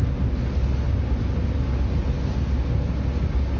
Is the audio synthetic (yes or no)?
no